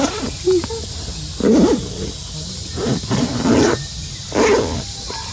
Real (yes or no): yes